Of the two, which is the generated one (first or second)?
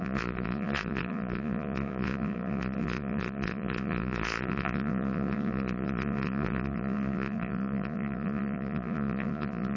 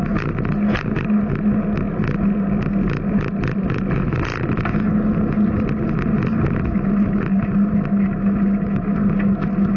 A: first